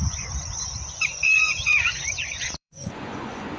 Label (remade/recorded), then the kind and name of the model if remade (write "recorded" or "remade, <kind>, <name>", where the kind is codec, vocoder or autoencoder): remade, vocoder, Vocos